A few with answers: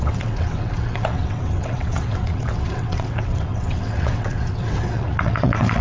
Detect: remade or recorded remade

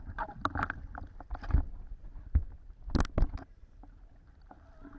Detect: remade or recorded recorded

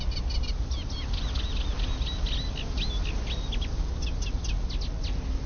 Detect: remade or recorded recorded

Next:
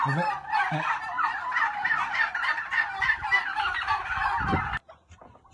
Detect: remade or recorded recorded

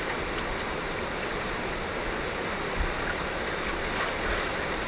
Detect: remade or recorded recorded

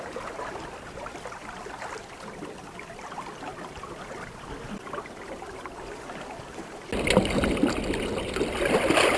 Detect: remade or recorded recorded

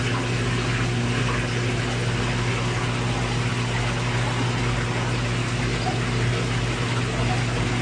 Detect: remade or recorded recorded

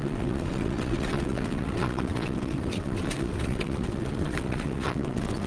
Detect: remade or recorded remade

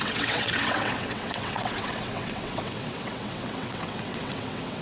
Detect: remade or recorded remade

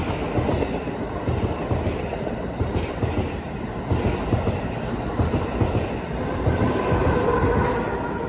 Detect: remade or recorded recorded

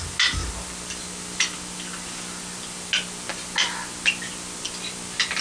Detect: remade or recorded recorded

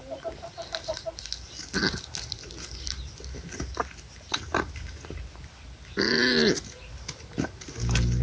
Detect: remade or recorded recorded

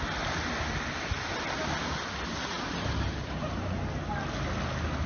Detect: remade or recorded recorded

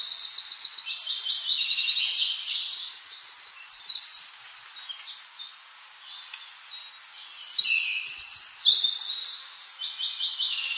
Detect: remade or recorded recorded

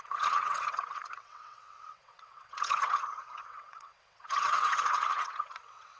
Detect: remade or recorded remade